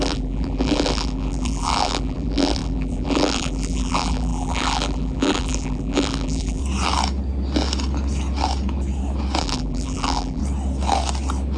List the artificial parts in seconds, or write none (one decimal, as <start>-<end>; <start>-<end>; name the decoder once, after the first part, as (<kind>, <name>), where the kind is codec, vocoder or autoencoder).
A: 0.0-6.6 (vocoder, BigVGAN v2); 9.4-10.4